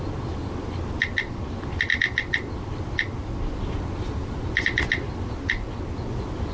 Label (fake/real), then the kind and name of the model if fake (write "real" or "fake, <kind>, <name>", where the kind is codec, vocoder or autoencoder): real